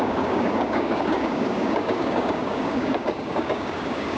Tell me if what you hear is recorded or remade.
remade